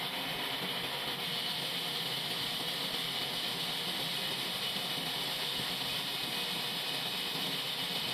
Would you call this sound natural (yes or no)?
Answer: yes